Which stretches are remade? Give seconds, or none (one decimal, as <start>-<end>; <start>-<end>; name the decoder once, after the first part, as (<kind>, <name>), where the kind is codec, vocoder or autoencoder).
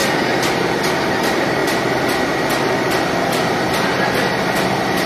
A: none